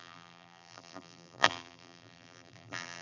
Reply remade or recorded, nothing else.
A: remade